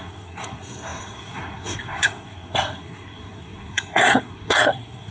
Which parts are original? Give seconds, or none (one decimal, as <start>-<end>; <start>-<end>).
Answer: none